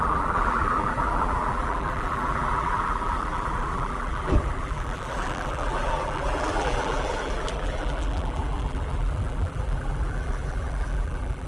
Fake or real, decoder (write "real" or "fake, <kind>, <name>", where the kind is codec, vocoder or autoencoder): fake, vocoder, BigVGAN v2